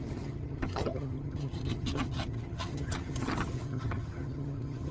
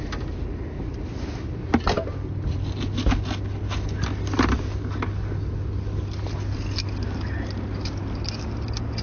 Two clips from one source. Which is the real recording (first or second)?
second